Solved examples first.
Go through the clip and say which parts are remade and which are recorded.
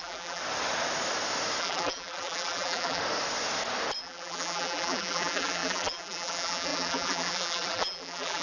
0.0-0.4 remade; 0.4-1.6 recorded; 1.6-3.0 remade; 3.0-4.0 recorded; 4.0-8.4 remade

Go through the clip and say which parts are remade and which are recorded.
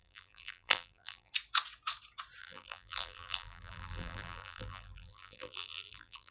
0.0-1.3 remade; 1.3-2.4 recorded; 2.4-6.3 remade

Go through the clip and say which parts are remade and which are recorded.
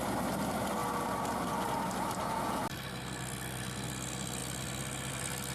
0.0-5.5 recorded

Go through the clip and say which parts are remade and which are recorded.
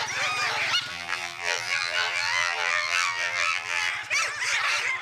0.0-0.9 recorded; 0.9-3.9 remade; 3.9-5.0 recorded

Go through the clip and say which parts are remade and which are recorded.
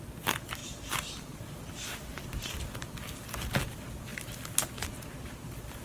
0.0-5.8 recorded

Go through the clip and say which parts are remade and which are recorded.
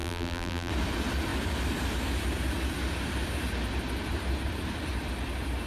0.0-0.7 remade; 0.7-5.7 recorded